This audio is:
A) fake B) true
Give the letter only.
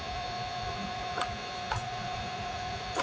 A